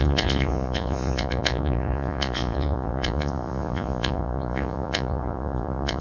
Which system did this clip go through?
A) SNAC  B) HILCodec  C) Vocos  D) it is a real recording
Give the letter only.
C